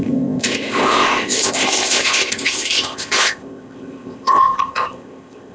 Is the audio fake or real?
fake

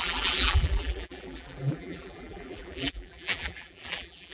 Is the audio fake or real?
fake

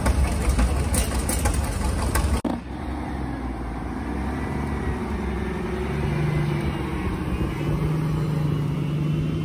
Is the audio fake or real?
real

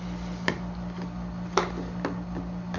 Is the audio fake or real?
real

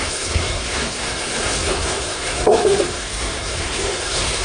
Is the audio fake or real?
fake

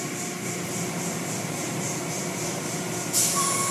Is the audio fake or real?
real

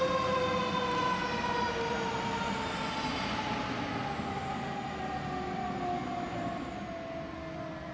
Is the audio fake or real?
real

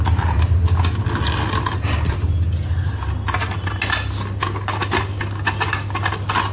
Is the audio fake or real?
real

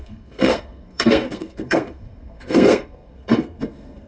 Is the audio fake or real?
fake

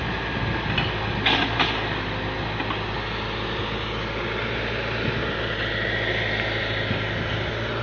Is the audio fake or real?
real